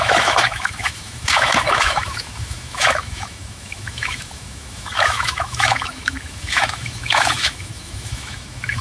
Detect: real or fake fake